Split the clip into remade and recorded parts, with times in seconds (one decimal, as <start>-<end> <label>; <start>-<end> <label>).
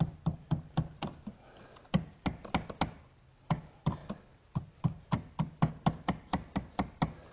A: 0.0-7.3 recorded